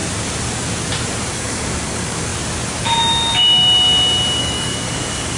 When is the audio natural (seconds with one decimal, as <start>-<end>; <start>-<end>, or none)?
0.0-1.3; 2.3-4.4